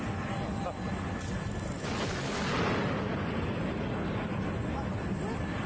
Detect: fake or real real